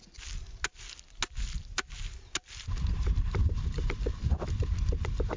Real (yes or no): yes